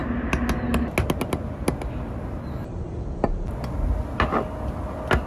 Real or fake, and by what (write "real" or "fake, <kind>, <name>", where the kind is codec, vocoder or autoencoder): real